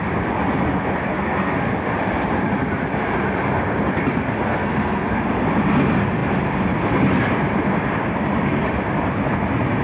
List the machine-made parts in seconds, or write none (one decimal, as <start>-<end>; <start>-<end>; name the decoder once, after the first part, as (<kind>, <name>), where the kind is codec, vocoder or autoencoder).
1.1-1.7 (codec, SNAC); 4.5-5.2